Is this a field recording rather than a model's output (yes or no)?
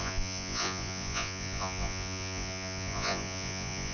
no